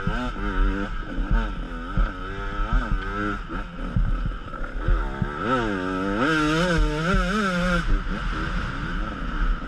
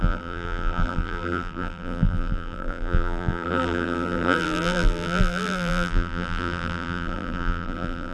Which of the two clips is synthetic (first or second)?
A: second